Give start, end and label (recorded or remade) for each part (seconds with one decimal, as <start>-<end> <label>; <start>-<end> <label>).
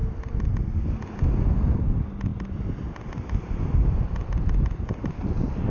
0.0-5.7 recorded